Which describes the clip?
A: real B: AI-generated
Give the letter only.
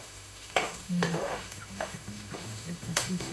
B